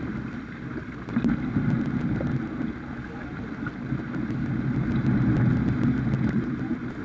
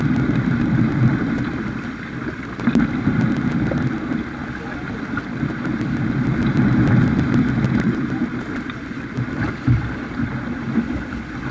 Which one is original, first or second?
first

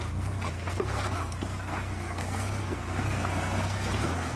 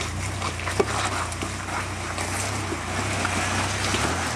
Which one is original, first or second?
second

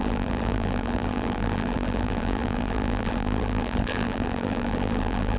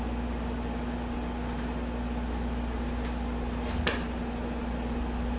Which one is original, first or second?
second